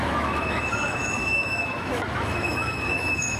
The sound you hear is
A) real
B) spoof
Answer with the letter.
B